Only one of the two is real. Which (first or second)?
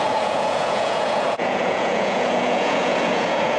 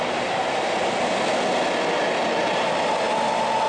second